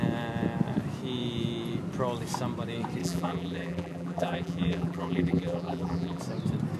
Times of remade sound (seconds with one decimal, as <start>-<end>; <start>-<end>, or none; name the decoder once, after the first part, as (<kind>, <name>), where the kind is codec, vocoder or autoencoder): 3.0-6.2 (vocoder, BigVGAN v2)